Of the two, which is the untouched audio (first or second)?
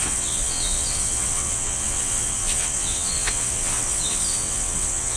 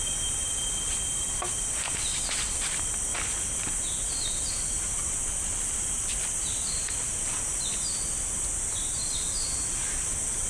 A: second